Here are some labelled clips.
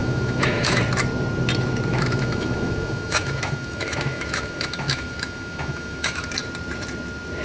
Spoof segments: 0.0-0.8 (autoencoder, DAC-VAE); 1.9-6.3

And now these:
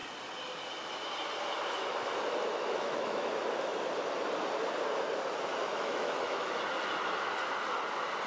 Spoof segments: 2.5-3.3 (autoencoder, DAC-VAE); 5.7-6.5

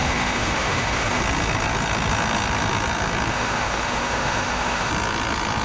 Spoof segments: 0.0-1.2 (autoencoder, DAC-VAE); 3.3-4.9

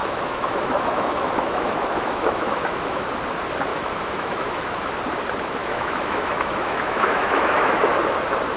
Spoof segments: 0.0-3.1 (autoencoder, DAC-VAE); 3.7-4.9; 5.6-7.9

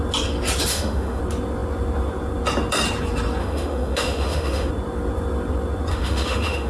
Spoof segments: 0.7-1.2 (autoencoder, DAC-VAE); 3.4-4.7; 5.9-6.7